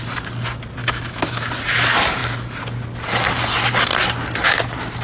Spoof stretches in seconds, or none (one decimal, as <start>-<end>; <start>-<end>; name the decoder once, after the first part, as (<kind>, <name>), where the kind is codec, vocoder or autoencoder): 0.8-1.5 (autoencoder, DAC-VAE)